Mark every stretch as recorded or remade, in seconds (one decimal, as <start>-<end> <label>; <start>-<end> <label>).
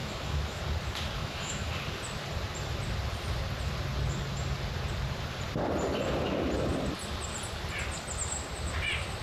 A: 0.0-0.6 remade; 0.6-1.2 recorded; 1.2-1.7 remade; 1.7-9.2 recorded